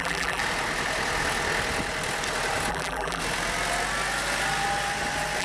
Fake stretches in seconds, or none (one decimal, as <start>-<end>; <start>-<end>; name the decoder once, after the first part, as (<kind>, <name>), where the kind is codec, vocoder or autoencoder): 0.0-0.4 (vocoder, BigVGAN v2); 2.7-3.2